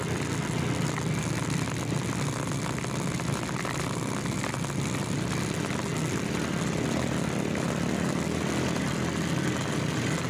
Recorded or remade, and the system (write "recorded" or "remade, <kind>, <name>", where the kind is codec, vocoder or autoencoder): recorded